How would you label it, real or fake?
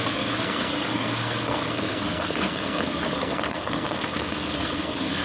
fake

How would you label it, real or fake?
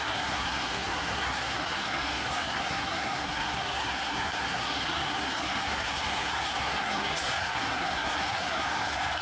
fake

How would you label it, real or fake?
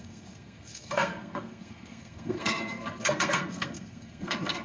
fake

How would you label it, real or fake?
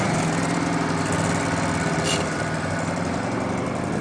real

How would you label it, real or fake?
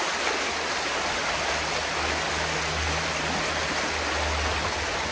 real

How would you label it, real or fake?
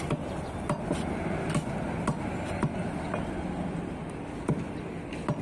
real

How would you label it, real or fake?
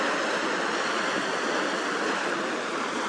real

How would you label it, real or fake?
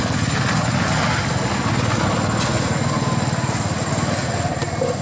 real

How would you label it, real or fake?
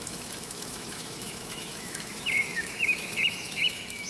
fake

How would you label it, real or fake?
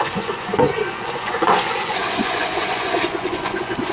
fake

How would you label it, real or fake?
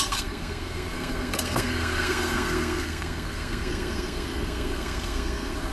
fake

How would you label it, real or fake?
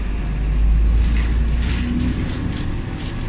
real